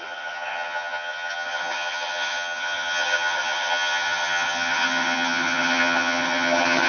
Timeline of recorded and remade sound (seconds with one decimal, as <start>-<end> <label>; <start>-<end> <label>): 0.0-6.9 remade